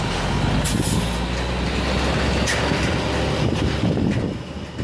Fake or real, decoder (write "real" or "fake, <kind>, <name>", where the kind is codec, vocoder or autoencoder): real